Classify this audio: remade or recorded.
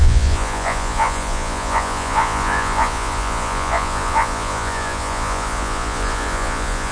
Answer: remade